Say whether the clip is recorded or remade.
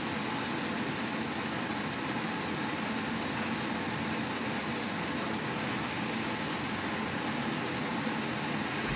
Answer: recorded